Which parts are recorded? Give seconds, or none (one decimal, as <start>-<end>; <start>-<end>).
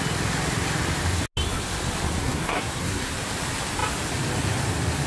0.0-2.2; 3.1-5.1